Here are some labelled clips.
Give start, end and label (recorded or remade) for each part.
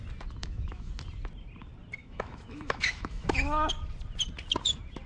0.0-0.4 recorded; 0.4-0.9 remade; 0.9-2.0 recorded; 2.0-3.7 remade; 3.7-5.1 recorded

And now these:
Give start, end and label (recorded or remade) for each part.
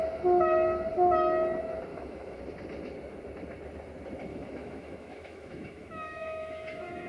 0.0-1.9 recorded; 1.9-2.4 remade; 2.4-4.3 recorded; 4.3-7.1 remade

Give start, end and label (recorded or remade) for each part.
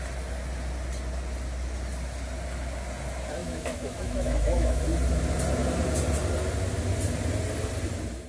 0.0-3.4 recorded; 3.4-4.8 remade; 4.8-8.3 recorded